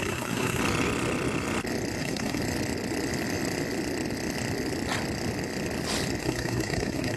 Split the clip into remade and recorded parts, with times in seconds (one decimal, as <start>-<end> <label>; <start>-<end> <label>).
0.0-0.6 remade; 0.6-2.0 recorded; 2.0-2.4 remade; 2.4-6.2 recorded; 6.2-7.2 remade

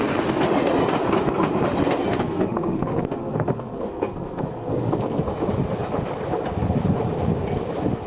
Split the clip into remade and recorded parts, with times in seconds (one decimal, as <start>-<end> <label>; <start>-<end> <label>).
0.0-2.1 recorded; 2.1-5.2 remade; 5.2-8.1 recorded

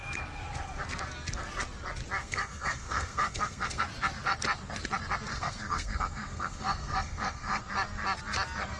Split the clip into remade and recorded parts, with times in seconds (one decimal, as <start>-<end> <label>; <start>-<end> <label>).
0.0-2.2 recorded; 2.2-3.8 remade; 3.8-5.3 recorded; 5.3-7.6 remade; 7.6-8.8 recorded